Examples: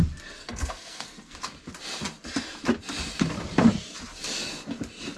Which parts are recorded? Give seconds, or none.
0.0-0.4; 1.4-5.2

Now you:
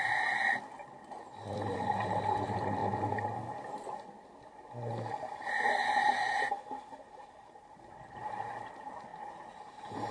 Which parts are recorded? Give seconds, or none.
0.0-10.1

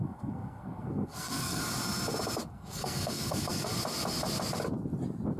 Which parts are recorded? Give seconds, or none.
1.6-2.5; 3.7-5.4